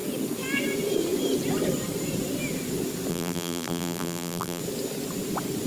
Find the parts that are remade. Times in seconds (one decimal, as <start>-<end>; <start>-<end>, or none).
3.1-4.6